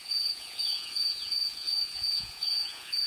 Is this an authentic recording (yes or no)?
no